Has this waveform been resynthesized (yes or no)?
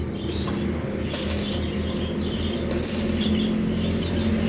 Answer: no